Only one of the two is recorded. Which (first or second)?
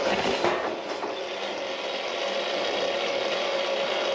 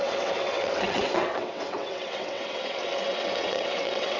first